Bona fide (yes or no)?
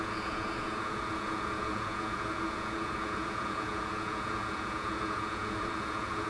no